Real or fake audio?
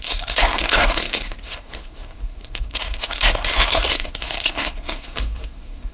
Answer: fake